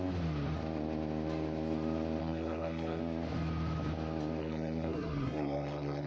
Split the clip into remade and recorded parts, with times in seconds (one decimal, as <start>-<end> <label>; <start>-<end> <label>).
0.0-2.2 recorded; 2.2-3.0 remade; 3.0-4.4 recorded; 4.4-6.1 remade